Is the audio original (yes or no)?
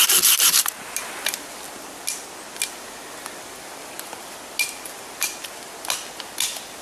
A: yes